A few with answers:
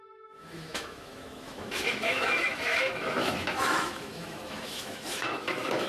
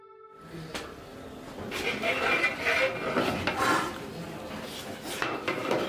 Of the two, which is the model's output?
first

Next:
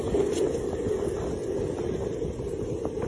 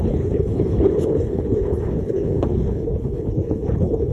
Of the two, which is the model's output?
second